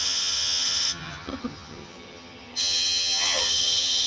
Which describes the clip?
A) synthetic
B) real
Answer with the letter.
A